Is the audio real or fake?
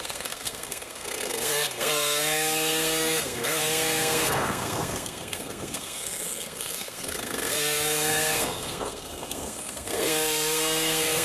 fake